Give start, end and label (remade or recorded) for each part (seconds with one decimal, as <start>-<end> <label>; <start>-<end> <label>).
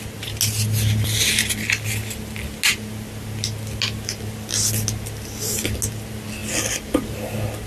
0.0-7.7 recorded